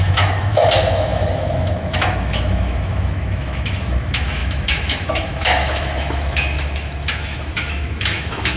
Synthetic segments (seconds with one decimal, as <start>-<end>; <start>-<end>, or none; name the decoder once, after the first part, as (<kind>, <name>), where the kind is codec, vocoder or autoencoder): 0.0-8.6 (autoencoder, DAC-VAE)